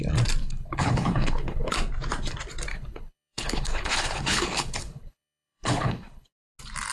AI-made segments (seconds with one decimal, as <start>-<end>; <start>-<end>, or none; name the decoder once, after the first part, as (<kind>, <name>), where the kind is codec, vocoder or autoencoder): 0.4-1.7 (codec, HILCodec); 2.7-6.3